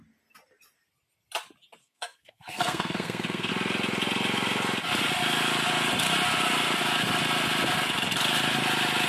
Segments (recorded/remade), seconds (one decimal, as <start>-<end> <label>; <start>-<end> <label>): 0.0-1.8 recorded; 1.8-3.5 remade; 3.5-9.1 recorded